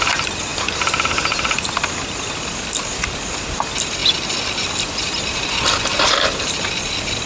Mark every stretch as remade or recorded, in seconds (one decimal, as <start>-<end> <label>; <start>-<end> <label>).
0.0-7.3 recorded